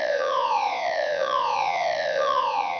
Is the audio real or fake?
fake